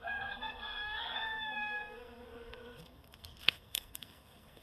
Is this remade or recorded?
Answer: remade